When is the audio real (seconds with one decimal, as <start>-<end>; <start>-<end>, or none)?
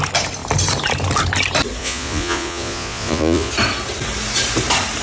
0.0-1.8; 3.5-5.0